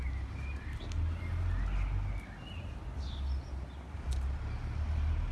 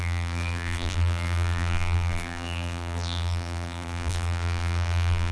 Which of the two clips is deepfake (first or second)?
second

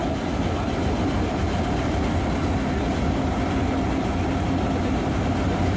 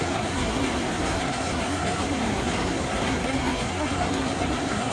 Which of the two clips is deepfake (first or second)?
second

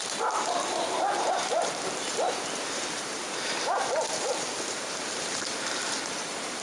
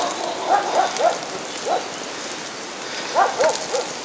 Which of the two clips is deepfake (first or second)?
first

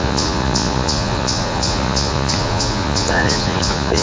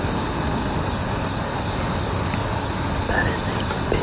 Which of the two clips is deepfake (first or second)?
first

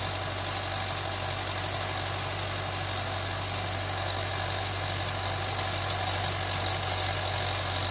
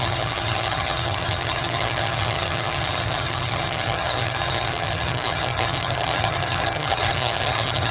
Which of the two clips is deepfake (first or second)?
second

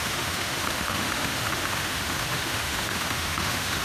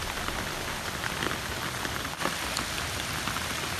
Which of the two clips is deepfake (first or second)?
first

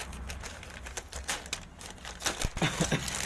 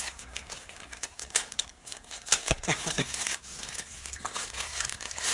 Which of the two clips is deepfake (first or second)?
second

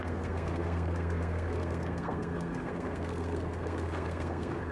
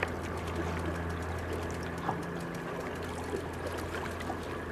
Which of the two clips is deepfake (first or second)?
first